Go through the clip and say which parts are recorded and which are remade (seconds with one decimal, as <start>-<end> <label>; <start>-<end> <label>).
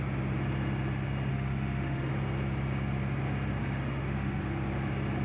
0.0-1.3 recorded; 1.3-2.1 remade; 2.1-3.6 recorded; 3.6-4.4 remade; 4.4-5.2 recorded